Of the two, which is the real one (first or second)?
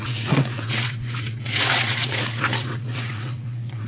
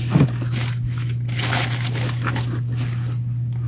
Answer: second